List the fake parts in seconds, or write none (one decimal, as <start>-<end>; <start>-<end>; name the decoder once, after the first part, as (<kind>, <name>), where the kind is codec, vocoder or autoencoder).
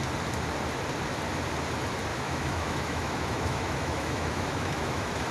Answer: 2.1-5.3 (autoencoder, DAC-VAE)